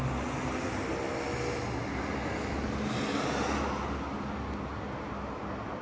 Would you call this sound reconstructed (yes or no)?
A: no